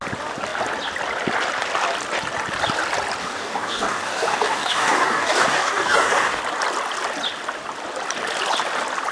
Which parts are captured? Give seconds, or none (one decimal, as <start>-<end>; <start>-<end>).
0.0-3.2; 6.4-9.1

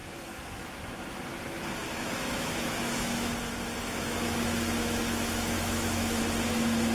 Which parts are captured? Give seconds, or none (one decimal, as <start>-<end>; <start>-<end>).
0.6-1.8; 3.3-3.8; 6.2-6.9

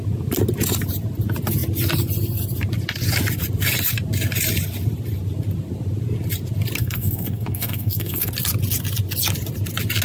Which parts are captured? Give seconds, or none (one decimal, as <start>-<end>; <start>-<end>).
0.0-6.8; 8.3-10.0

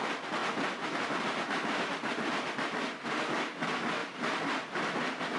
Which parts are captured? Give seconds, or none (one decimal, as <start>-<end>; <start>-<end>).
0.0-5.4

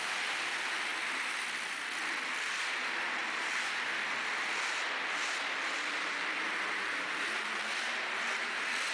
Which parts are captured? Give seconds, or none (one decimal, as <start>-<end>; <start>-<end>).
0.0-0.9; 3.6-8.9

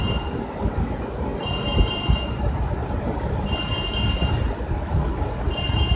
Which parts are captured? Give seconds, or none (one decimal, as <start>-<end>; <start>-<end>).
0.0-6.0

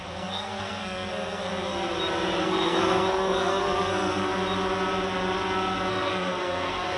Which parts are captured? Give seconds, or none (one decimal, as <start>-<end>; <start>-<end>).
1.9-2.4; 4.3-5.9